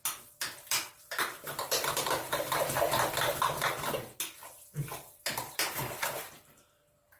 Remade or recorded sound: remade